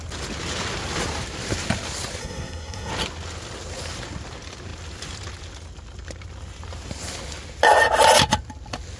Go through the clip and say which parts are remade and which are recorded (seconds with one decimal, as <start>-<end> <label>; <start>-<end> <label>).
0.0-2.2 recorded; 2.2-2.9 remade; 2.9-9.0 recorded